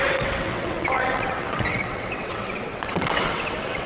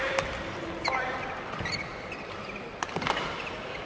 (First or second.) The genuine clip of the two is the second